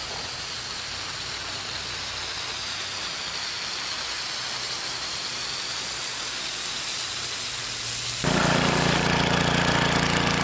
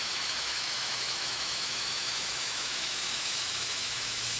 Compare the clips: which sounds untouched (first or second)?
first